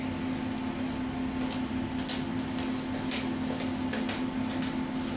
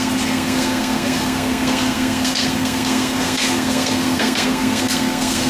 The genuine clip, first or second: first